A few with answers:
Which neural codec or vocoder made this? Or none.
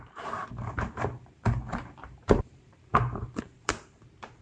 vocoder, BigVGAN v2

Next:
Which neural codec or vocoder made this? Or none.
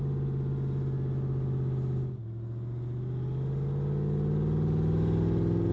none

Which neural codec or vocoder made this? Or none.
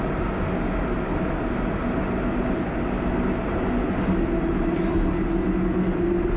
none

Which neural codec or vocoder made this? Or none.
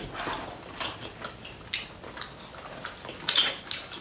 none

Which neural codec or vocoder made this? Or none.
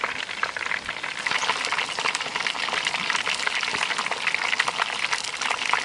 none